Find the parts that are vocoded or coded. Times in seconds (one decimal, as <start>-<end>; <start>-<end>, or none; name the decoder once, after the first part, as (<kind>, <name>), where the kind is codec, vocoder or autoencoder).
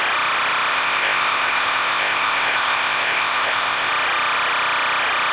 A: 0.7-3.9 (codec, ZipCodec)